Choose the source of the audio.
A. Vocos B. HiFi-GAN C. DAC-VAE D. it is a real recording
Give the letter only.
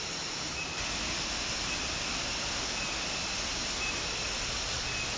D